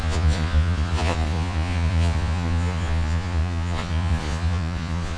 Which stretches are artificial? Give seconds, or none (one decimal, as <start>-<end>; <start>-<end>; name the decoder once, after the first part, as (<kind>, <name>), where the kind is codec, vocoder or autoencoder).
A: 0.0-5.2 (vocoder, Vocos)